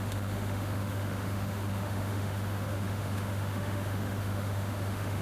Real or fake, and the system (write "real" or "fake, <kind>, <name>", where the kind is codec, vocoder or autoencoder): fake, autoencoder, DAC-VAE